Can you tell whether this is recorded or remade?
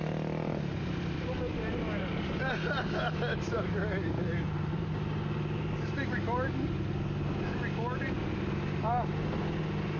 recorded